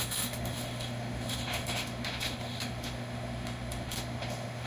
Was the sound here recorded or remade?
remade